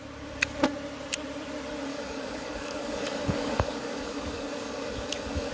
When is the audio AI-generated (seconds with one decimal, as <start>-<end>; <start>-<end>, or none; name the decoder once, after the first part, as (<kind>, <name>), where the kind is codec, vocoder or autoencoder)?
1.9-5.5 (codec, DAC)